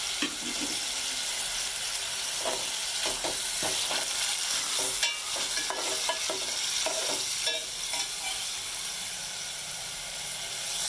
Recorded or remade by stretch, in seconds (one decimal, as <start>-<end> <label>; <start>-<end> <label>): 0.0-10.9 recorded